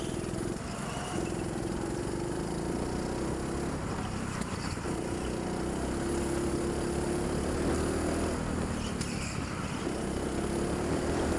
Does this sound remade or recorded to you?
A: recorded